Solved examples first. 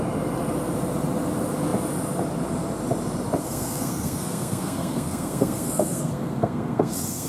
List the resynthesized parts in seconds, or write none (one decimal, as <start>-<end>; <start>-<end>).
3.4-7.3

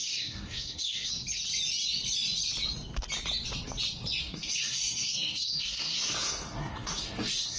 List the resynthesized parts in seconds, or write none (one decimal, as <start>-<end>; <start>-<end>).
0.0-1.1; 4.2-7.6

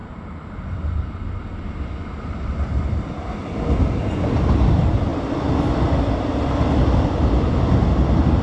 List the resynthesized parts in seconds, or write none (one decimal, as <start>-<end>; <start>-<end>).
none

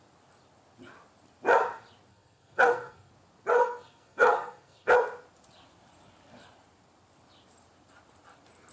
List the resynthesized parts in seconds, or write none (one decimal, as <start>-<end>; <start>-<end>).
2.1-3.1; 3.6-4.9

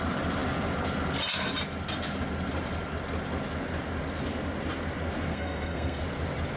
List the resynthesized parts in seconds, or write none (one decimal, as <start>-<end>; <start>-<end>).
5.3-6.0

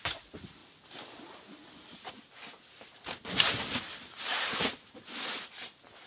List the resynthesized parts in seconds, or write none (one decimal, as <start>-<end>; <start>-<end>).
none

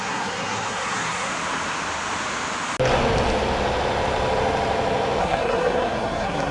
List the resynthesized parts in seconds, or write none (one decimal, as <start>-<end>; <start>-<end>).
0.0-1.3; 5.2-6.5

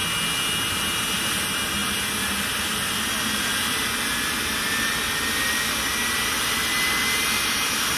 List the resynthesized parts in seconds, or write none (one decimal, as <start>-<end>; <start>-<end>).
none